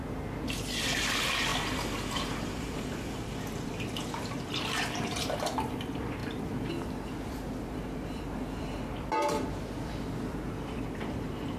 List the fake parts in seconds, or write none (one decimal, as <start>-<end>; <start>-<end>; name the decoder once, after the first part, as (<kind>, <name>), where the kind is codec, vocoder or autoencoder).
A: none